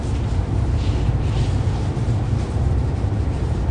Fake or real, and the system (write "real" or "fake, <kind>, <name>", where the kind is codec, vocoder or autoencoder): fake, vocoder, BigVGAN v2